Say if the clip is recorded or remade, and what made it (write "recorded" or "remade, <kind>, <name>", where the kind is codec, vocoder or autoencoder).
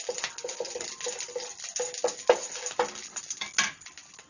recorded